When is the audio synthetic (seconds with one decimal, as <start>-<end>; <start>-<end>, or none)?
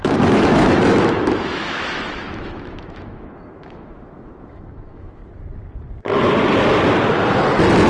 0.0-5.2